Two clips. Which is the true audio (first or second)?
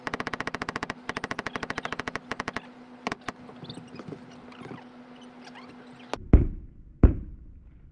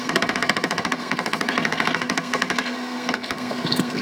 first